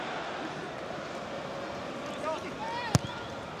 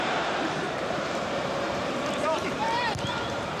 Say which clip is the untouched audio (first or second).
first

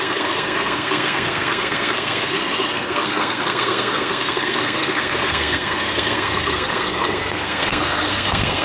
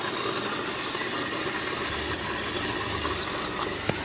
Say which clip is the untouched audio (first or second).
second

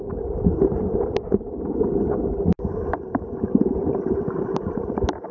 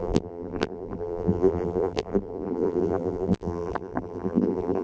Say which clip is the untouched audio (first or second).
first